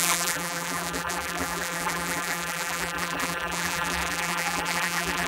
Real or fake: fake